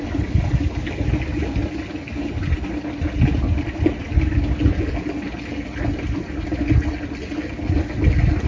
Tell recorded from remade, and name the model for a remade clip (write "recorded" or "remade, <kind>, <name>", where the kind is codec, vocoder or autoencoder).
recorded